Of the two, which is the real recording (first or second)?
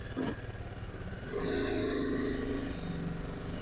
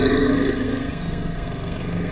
first